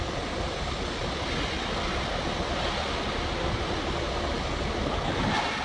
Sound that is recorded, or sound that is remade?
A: recorded